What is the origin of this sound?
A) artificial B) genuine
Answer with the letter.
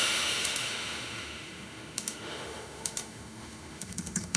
A